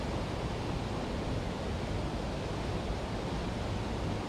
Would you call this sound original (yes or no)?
yes